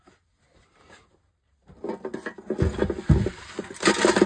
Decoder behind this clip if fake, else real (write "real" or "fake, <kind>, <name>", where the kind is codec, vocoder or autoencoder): real